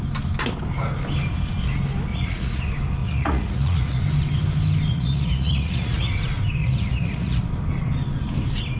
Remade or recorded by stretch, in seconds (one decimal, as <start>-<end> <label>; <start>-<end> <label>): 0.0-2.1 recorded; 2.1-2.6 remade; 2.6-3.0 recorded; 3.0-4.0 remade; 4.0-4.9 recorded; 4.9-6.1 remade; 6.1-6.6 recorded; 6.6-7.4 remade; 7.4-8.8 recorded